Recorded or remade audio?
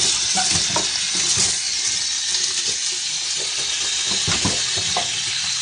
recorded